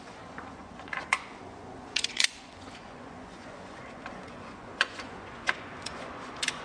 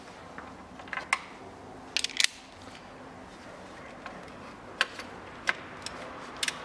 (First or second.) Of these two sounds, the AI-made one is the first